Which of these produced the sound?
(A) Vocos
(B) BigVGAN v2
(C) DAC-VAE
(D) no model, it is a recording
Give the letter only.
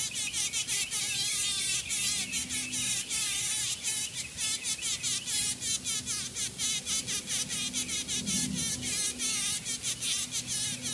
D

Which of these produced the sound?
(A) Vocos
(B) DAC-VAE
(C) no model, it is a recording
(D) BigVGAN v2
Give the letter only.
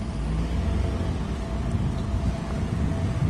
C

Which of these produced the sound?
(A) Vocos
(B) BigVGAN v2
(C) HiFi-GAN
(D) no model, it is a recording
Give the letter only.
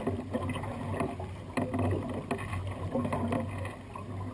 D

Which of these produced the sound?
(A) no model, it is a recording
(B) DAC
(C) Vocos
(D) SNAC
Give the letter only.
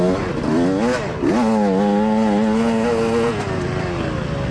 A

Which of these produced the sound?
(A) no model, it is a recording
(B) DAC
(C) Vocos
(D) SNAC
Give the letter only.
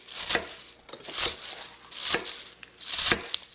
A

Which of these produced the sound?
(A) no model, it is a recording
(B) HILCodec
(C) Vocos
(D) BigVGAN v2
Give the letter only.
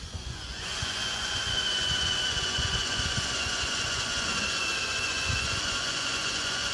C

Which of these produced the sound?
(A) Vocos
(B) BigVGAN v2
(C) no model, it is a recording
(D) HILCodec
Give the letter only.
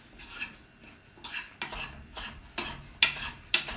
C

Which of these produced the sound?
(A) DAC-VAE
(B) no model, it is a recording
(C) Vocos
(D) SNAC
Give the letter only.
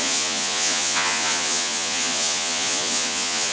C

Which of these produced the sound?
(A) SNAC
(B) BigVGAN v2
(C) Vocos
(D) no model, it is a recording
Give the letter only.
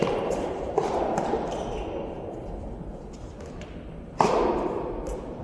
D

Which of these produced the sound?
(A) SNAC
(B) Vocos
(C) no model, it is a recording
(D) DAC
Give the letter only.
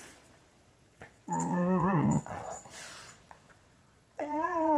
B